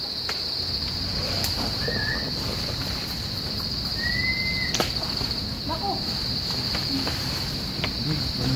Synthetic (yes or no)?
no